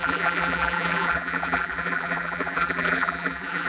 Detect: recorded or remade remade